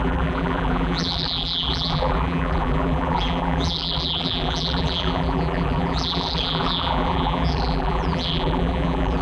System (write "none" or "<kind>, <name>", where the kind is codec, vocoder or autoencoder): vocoder, BigVGAN v2